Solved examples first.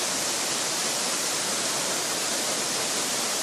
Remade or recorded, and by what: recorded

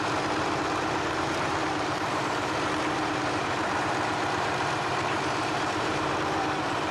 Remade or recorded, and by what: remade, vocoder, BigVGAN v2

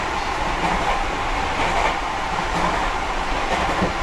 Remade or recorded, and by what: remade, vocoder, BigVGAN v2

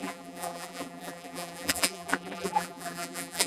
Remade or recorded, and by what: remade, vocoder, BigVGAN v2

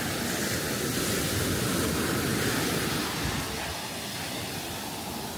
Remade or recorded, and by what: recorded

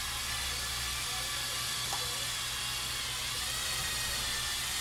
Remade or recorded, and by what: recorded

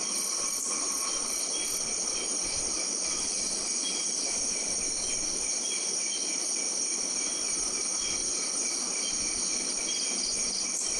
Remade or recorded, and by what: recorded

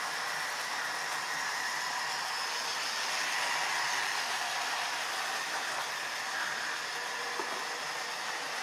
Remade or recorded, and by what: recorded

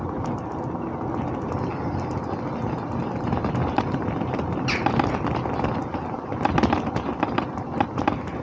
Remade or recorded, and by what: recorded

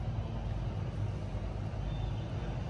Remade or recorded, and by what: recorded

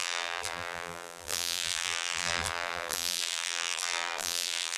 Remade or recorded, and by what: remade, vocoder, BigVGAN v2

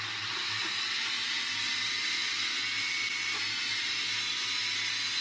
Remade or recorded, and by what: recorded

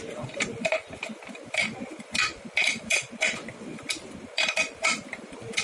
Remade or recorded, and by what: remade, vocoder, BigVGAN v2